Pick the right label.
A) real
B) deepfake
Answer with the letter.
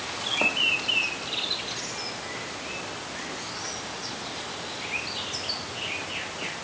A